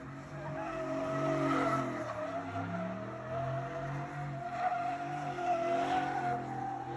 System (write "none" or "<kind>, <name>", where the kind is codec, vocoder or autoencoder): none